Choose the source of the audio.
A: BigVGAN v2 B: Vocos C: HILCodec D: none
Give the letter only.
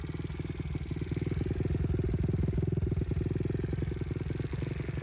D